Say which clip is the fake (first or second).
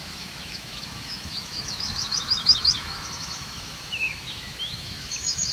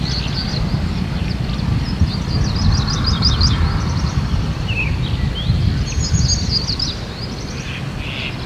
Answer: first